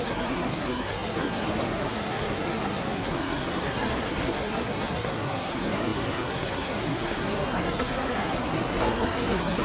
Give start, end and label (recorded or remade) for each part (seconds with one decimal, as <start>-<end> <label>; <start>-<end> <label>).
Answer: 0.0-9.6 remade